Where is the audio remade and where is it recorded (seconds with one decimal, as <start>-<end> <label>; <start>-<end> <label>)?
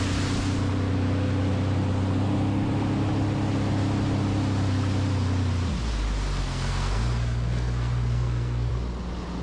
0.0-6.4 recorded; 6.4-8.7 remade; 8.7-9.4 recorded